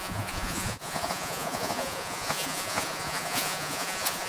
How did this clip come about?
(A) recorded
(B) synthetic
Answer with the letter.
B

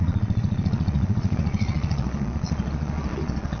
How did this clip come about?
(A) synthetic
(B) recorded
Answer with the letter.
A